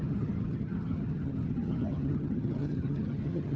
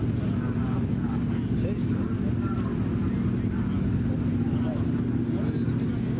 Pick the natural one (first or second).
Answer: second